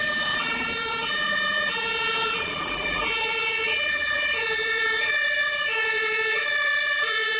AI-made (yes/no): yes